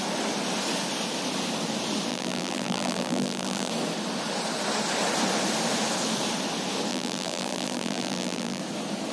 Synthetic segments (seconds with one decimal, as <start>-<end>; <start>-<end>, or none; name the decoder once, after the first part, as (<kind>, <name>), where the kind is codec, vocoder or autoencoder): 2.1-3.7 (vocoder, BigVGAN v2); 6.9-8.6